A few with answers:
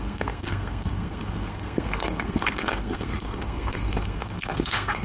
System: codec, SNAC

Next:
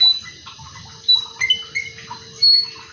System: none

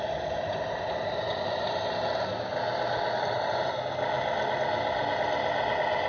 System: none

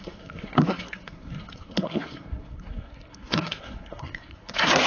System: codec, SNAC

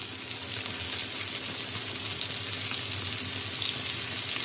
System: none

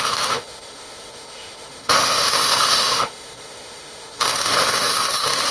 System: autoencoder, DAC-VAE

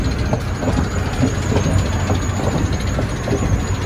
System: none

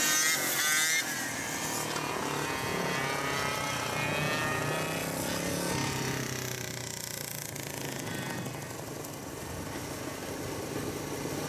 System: none